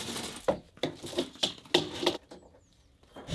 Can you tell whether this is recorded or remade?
recorded